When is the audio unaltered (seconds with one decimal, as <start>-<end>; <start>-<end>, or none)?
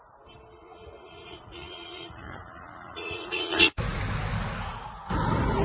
0.0-0.6; 4.0-5.6